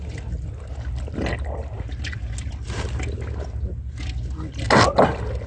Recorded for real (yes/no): yes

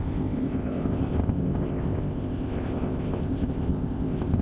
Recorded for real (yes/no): no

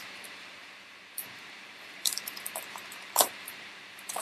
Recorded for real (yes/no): no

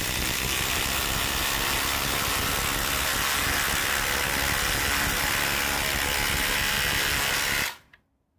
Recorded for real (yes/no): yes